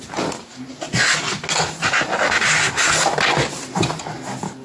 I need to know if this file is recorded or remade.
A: recorded